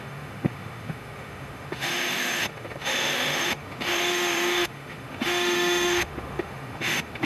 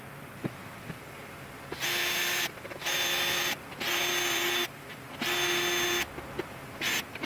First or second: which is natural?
second